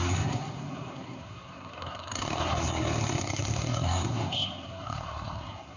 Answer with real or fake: fake